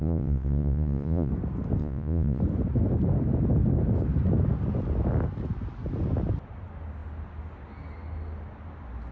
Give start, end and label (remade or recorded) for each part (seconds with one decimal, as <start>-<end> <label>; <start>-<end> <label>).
0.0-1.3 remade; 1.3-1.8 recorded; 1.8-2.4 remade; 2.4-9.1 recorded